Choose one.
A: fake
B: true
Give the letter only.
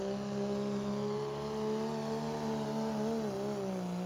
B